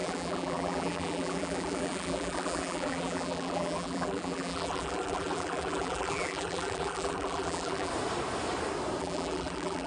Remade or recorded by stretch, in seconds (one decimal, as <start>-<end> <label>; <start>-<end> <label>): 0.0-7.9 remade; 7.9-9.0 recorded; 9.0-9.9 remade